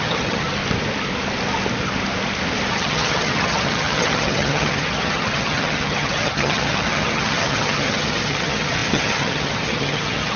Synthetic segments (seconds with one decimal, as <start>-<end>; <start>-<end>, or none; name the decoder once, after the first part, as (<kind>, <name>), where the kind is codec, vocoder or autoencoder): 0.0-0.6 (vocoder, HiFi-GAN); 2.7-10.4